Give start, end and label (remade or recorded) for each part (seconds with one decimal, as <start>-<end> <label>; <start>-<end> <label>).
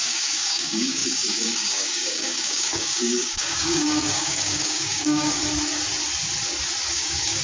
0.0-5.4 remade; 5.4-6.9 recorded; 6.9-7.4 remade